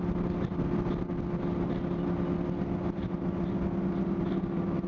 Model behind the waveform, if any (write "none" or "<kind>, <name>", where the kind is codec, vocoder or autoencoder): none